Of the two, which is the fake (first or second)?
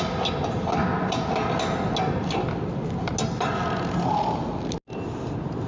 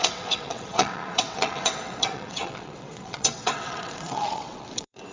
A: second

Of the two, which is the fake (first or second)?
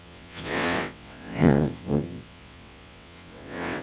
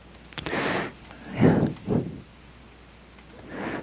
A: first